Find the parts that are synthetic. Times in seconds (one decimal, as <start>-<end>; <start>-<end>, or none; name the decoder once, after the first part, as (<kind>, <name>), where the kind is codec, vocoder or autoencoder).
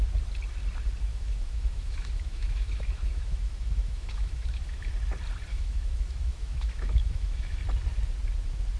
1.1-4.9 (autoencoder, DAC-VAE); 5.5-7.6